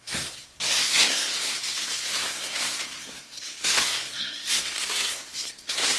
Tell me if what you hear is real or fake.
fake